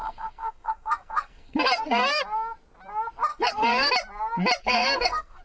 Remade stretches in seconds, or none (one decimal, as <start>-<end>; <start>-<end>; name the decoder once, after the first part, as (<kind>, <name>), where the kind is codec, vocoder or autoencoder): 0.0-2.2 (codec, SNAC); 3.3-3.9; 4.6-5.4